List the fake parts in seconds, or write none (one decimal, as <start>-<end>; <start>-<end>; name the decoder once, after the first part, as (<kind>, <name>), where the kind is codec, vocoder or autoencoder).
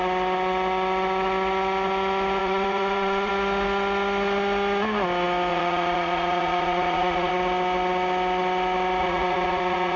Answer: 2.4-3.3 (vocoder, Vocos); 5.5-7.3; 9.0-10.0